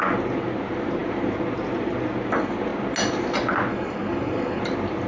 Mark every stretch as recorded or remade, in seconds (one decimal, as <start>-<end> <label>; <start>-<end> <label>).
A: 0.0-3.7 recorded; 3.7-4.6 remade; 4.6-5.1 recorded